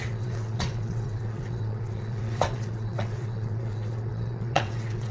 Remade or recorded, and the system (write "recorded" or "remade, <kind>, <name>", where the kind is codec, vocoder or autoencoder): remade, vocoder, WaveNeXt